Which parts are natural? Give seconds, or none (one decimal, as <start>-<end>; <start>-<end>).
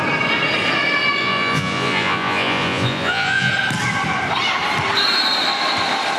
0.0-1.2; 3.5-6.2